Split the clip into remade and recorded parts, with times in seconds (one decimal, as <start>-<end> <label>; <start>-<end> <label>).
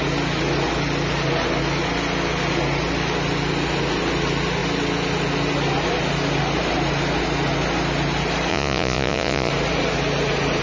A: 0.0-8.5 recorded; 8.5-9.5 remade; 9.5-10.6 recorded